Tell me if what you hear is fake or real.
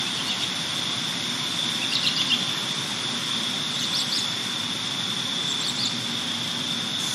real